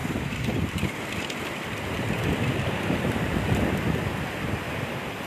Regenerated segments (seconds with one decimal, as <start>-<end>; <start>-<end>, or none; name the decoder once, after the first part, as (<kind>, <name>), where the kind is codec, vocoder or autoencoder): 0.0-3.2 (vocoder, BigVGAN v2)